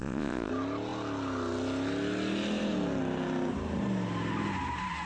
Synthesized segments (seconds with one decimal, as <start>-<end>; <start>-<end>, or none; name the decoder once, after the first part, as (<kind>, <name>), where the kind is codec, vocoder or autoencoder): 0.0-0.5 (vocoder, Vocos)